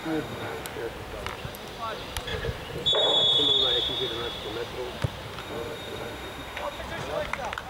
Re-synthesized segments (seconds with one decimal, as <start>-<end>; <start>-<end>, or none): 0.0-0.6; 5.4-6.8